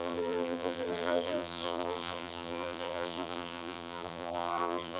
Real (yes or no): no